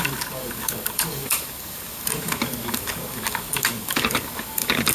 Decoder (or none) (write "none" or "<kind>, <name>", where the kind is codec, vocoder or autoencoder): codec, DAC